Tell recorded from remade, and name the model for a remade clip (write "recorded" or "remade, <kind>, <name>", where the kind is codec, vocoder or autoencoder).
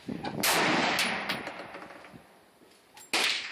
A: recorded